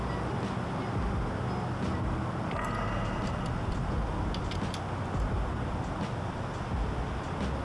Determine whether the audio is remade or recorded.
recorded